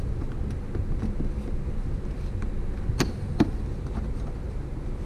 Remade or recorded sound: recorded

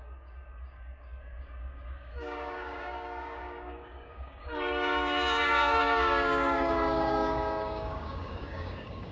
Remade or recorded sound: remade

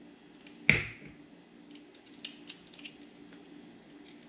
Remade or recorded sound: recorded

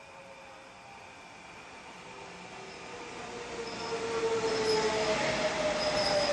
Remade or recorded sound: recorded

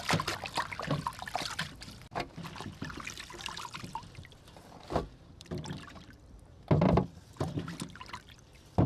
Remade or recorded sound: recorded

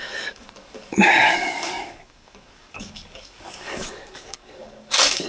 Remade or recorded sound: remade